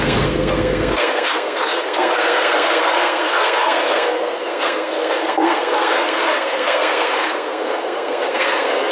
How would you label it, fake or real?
fake